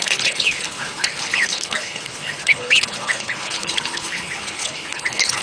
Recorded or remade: remade